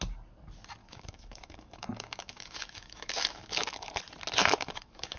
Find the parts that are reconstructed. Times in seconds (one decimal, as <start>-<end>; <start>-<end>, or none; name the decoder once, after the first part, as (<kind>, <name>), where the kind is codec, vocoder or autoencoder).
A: 0.8-3.9 (autoencoder, DAC-VAE); 4.4-5.2